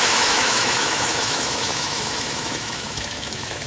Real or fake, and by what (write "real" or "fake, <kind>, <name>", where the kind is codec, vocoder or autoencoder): fake, autoencoder, DAC-VAE